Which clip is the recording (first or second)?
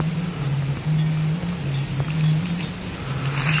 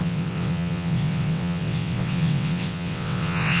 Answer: first